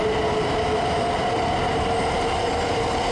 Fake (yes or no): no